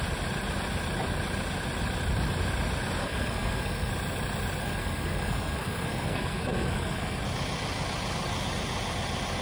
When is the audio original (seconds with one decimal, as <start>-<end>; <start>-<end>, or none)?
0.0-3.0; 3.9-4.6; 7.2-9.4